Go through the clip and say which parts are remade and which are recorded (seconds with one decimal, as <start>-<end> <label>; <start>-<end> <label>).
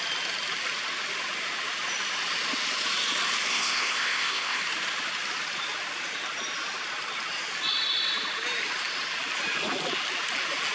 0.0-3.5 recorded; 3.5-4.6 remade; 4.6-10.7 recorded